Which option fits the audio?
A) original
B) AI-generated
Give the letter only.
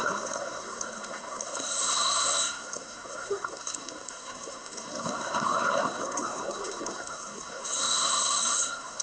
B